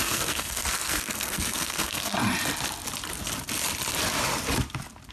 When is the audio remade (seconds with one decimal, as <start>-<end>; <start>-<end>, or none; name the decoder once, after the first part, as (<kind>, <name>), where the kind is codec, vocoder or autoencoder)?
0.0-2.1 (codec, SNAC)